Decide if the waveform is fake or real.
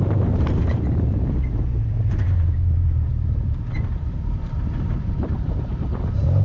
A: fake